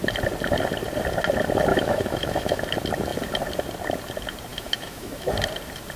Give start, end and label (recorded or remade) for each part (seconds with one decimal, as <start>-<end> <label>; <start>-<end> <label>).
0.0-1.7 recorded; 1.7-2.6 remade; 2.6-4.5 recorded; 4.5-5.3 remade; 5.3-6.0 recorded